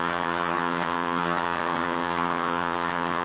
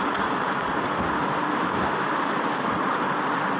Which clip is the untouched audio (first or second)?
second